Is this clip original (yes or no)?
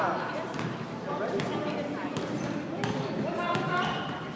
yes